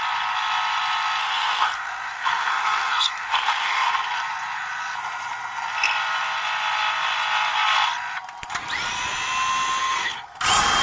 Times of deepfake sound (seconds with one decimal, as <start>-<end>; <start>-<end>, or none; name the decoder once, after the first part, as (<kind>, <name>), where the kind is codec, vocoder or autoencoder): 1.2-3.9 (codec, SNAC); 9.8-10.4

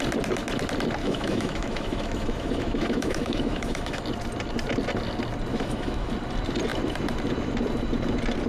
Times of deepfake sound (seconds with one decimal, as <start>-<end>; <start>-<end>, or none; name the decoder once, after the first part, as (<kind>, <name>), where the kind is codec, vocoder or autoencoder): 1.0-4.0 (autoencoder, DAC-VAE); 5.5-6.1

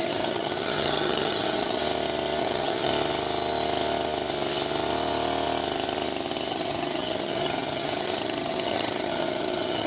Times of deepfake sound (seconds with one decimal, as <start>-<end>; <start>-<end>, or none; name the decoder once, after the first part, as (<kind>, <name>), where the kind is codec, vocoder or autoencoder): 0.0-1.8 (vocoder, HiFi-GAN); 2.4-2.9; 6.5-9.9

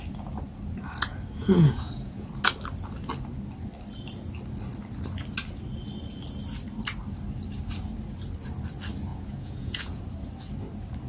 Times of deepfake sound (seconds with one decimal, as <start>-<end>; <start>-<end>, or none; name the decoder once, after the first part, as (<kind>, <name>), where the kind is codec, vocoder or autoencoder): 1.4-2.3 (vocoder, Vocos); 9.1-10.0

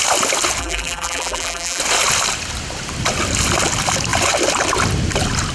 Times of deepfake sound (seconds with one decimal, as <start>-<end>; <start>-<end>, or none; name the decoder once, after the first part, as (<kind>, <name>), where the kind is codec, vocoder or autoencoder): 0.6-1.8 (vocoder, BigVGAN v2)

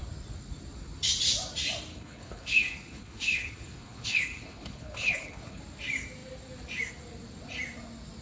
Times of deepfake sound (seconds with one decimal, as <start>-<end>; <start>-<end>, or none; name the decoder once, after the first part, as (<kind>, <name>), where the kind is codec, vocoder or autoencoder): 1.9-5.6 (codec, HILCodec)

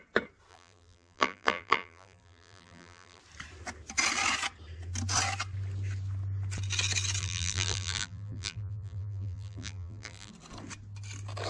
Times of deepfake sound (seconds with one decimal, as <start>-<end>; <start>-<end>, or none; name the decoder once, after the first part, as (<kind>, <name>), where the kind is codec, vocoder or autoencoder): 0.5-3.2 (vocoder, BigVGAN v2); 7.2-10.3

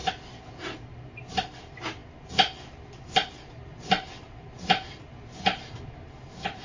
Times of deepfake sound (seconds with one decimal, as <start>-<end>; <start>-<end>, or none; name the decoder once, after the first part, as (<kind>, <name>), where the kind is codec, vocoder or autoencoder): none